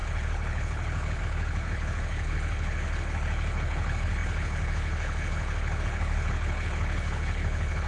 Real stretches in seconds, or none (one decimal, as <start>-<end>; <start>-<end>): none